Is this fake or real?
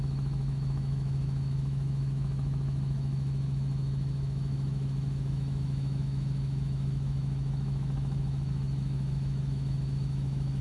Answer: fake